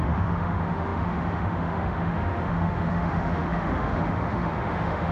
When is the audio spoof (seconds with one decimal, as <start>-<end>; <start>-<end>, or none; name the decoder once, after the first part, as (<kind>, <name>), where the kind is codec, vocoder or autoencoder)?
0.0-5.1 (autoencoder, DAC-VAE)